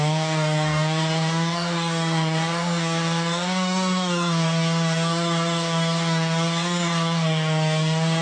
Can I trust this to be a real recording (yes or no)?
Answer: no